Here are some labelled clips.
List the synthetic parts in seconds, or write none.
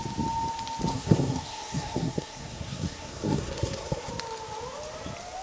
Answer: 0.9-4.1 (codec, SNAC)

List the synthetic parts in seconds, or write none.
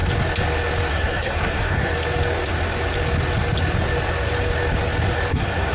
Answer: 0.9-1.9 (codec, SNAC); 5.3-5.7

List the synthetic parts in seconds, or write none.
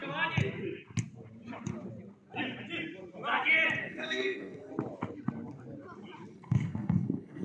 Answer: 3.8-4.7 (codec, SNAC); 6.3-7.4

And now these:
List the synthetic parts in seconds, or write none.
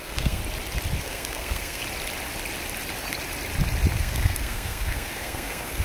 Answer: 0.0-0.4 (codec, SNAC); 1.0-1.8; 4.0-5.8